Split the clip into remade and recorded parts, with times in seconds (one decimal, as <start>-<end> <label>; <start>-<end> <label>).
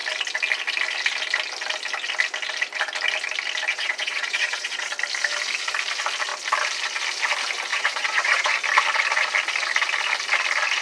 0.0-3.7 recorded; 3.7-4.9 remade; 4.9-7.7 recorded; 7.7-8.5 remade; 8.5-10.8 recorded